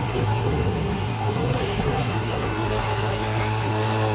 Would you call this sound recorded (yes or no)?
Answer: no